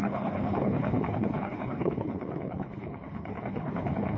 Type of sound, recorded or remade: remade